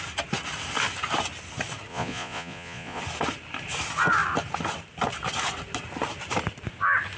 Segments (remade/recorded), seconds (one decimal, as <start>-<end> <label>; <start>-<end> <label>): 0.0-1.9 recorded; 1.9-3.0 remade; 3.0-7.2 recorded